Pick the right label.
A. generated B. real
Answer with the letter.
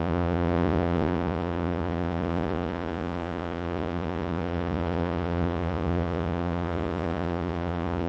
A